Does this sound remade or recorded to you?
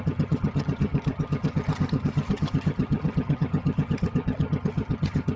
remade